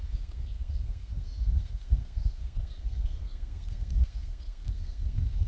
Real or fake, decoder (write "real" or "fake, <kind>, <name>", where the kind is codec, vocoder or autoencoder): fake, codec, SNAC